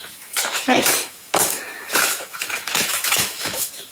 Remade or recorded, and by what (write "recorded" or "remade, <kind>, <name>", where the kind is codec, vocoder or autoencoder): remade, autoencoder, DAC-VAE